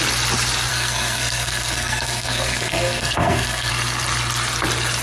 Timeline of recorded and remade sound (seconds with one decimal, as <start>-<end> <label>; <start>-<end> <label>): 0.0-0.7 recorded; 0.7-3.7 remade; 3.7-5.0 recorded